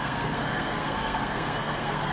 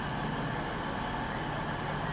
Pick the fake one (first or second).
first